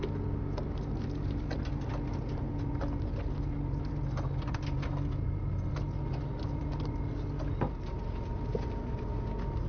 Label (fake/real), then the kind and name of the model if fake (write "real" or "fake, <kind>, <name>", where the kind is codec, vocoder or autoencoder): real